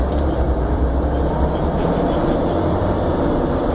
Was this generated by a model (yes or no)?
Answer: yes